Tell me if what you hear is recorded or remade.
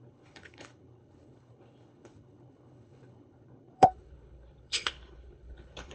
remade